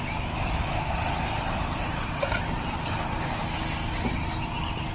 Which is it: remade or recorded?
recorded